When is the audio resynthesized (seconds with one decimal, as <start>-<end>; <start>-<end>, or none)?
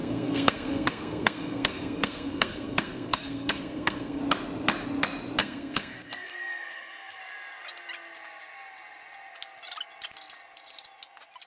0.0-4.2; 5.4-7.2